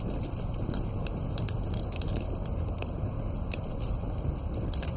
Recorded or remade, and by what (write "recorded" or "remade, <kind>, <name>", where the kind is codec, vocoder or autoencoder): recorded